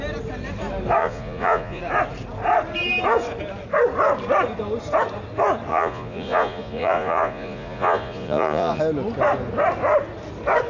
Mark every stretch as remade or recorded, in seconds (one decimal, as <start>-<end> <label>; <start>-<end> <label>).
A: 0.0-1.0 recorded; 1.0-1.8 remade; 1.8-5.7 recorded; 5.7-8.8 remade; 8.8-10.7 recorded